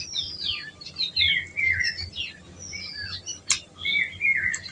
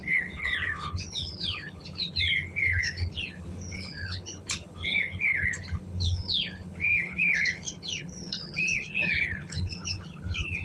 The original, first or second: first